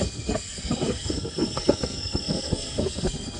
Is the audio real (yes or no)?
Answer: no